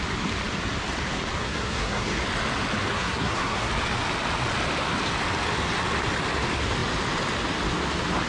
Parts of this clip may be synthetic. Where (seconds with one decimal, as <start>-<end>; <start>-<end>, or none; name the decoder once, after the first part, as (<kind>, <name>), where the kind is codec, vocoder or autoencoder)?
1.4-2.2 (codec, SNAC); 2.9-3.7